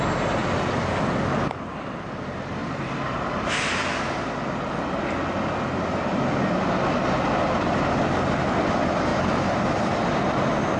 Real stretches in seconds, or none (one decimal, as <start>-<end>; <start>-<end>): 0.0-2.6; 3.2-9.1; 9.8-10.8